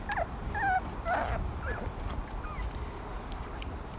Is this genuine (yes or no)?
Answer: yes